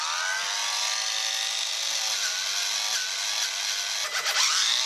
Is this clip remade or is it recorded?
recorded